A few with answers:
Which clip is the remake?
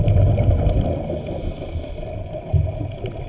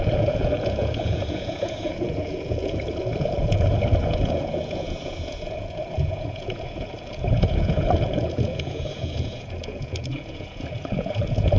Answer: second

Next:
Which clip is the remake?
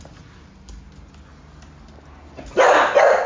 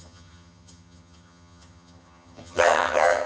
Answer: second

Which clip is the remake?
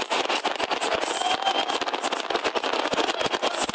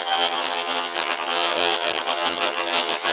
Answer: second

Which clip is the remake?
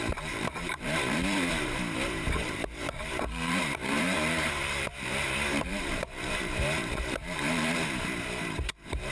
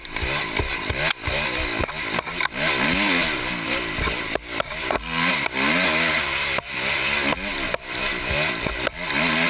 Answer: first